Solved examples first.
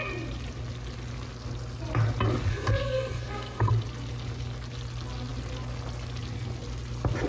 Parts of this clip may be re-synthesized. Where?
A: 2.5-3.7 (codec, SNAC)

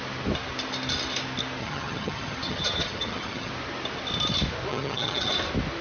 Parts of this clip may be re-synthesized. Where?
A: 1.6-3.5 (vocoder, HiFi-GAN); 4.7-5.3

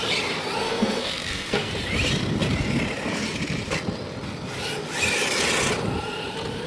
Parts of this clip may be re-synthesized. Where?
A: 0.6-1.7 (codec, SNAC)